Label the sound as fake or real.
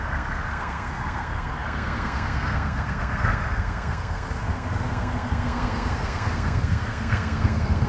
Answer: fake